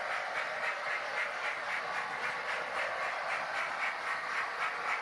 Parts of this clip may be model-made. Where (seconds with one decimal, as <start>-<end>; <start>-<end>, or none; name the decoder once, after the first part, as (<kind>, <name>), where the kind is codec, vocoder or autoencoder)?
none